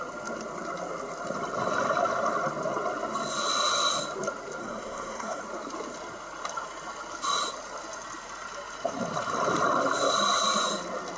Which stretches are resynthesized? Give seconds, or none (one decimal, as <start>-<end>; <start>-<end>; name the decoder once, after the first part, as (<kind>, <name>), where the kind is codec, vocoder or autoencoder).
4.6-5.4 (codec, SNAC)